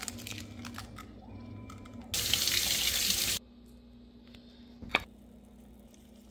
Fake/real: real